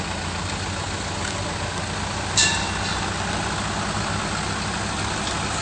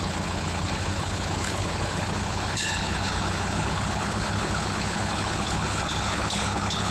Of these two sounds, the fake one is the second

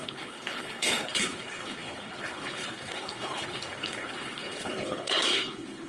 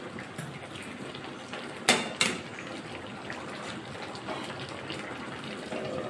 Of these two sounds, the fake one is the first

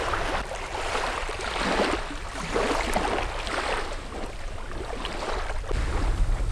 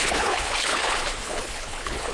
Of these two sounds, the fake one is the second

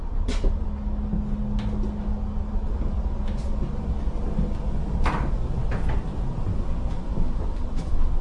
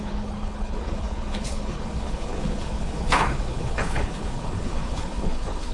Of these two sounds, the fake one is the second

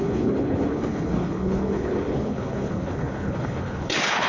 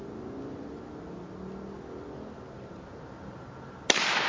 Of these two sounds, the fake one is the first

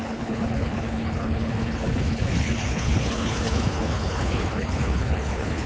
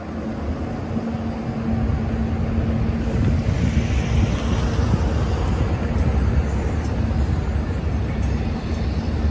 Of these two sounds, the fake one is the first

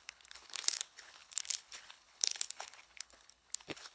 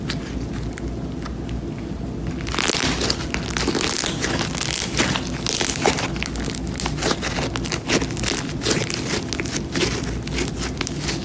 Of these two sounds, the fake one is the first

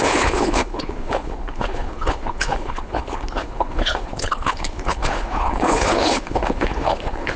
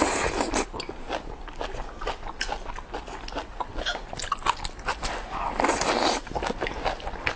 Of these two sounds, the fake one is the first